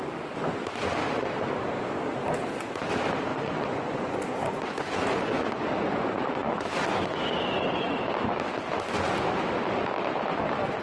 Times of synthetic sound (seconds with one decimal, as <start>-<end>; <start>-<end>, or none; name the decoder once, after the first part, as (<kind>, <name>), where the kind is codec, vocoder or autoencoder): 3.3-6.8 (vocoder, Vocos)